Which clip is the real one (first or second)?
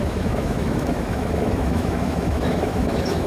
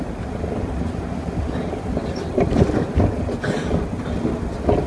second